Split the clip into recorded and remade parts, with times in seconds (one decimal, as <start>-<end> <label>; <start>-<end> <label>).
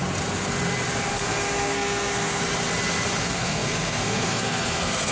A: 0.0-1.1 recorded; 1.1-2.4 remade; 2.4-3.2 recorded; 3.2-5.1 remade